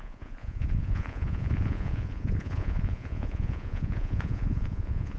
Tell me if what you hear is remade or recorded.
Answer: remade